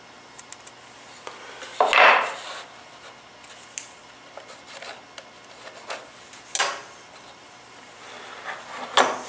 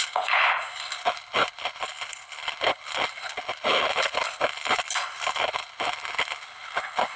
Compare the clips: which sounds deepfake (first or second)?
second